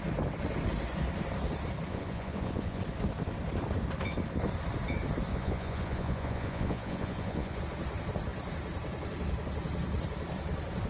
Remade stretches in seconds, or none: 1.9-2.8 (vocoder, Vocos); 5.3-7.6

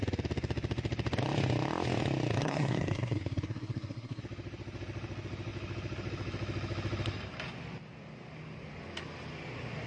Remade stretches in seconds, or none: 2.4-4.2 (codec, SNAC)

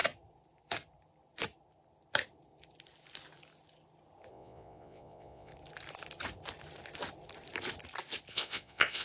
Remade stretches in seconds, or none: 4.3-5.5 (vocoder, Vocos); 8.3-9.0